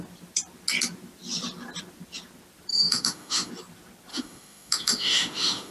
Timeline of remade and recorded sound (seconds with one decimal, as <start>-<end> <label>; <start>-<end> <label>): 0.0-2.7 recorded; 2.7-3.5 remade; 3.5-4.1 recorded; 4.1-5.7 remade